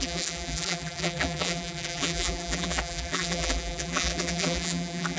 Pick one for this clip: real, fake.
fake